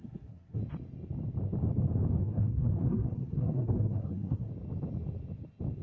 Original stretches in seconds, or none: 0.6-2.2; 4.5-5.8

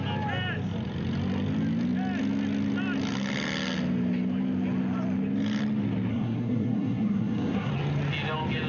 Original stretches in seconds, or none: 0.0-6.1; 7.7-8.7

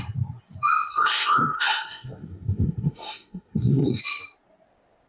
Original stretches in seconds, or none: 0.0-0.9; 4.0-5.1